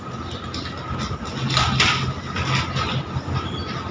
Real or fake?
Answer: real